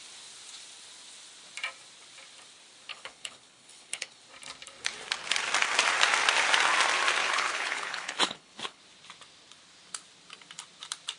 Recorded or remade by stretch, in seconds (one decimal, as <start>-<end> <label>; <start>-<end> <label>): 0.0-2.9 recorded; 2.9-4.2 remade; 4.2-7.2 recorded; 7.2-8.8 remade; 8.8-11.2 recorded